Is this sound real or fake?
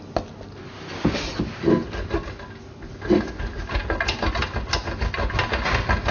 real